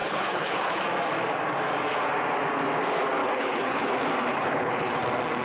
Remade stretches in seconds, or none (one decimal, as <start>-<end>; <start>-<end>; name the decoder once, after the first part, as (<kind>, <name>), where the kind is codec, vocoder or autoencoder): 0.0-0.8 (codec, HILCodec); 3.2-3.9; 4.3-5.0